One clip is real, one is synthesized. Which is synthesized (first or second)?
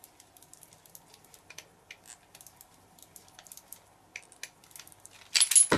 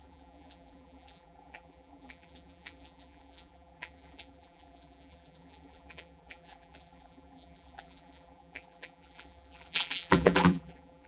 second